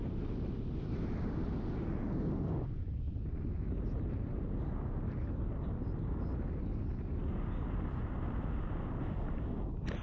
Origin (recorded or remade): recorded